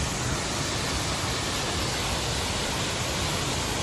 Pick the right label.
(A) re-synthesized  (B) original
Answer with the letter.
B